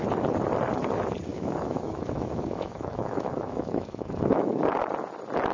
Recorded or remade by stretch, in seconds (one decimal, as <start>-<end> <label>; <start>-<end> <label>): 0.0-1.3 recorded; 1.3-4.6 remade; 4.6-5.5 recorded